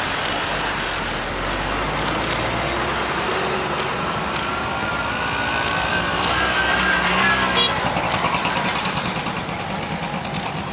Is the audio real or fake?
real